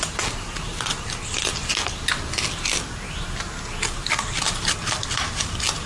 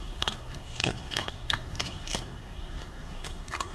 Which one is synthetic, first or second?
second